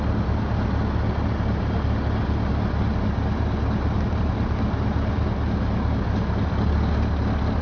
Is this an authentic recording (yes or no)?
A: yes